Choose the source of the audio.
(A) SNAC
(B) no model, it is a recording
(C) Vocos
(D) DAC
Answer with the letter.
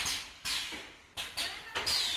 B